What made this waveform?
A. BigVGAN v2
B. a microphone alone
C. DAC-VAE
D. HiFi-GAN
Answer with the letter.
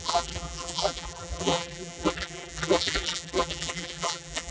A